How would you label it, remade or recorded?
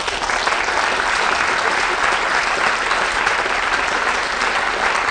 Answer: recorded